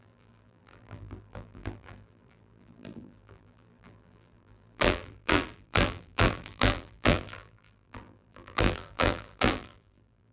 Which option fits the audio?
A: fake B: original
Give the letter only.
A